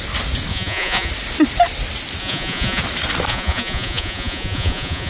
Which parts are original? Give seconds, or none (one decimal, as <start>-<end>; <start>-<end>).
0.0-0.5; 1.1-2.2; 2.8-3.3